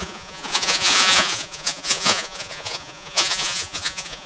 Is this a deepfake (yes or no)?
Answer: yes